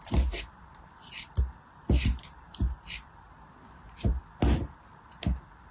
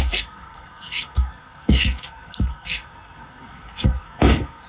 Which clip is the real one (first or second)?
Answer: first